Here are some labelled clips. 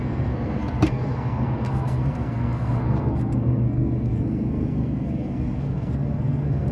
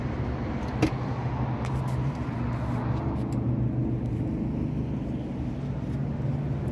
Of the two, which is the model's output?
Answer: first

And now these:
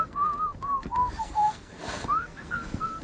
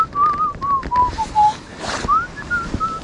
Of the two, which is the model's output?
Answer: first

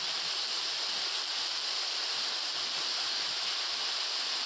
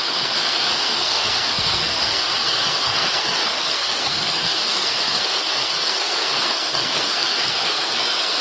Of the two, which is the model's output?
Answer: second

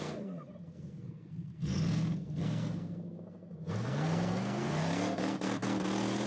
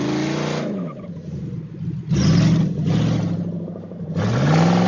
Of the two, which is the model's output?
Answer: first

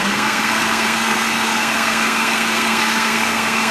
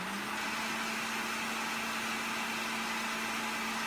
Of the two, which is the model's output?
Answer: first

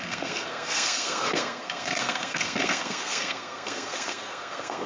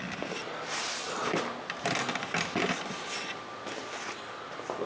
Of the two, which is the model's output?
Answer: first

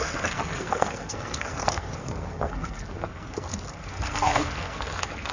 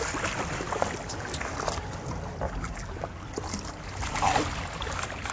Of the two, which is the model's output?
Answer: first